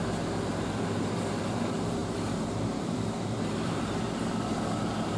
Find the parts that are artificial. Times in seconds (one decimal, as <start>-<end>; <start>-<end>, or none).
0.0-5.2